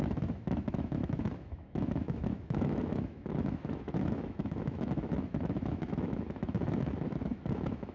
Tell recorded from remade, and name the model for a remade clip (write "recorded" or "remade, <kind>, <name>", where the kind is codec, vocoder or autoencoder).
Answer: remade, autoencoder, DAC-VAE